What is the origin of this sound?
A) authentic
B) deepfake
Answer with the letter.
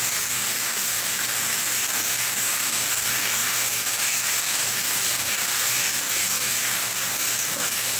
B